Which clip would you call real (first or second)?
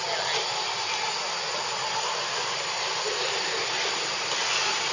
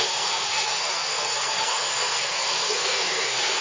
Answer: first